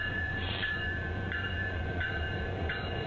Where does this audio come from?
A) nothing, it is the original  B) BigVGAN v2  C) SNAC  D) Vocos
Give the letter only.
D